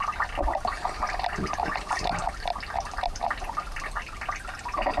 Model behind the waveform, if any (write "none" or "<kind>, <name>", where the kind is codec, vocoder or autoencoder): none